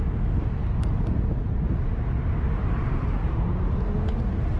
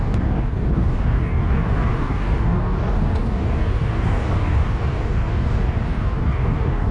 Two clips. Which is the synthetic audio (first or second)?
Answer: second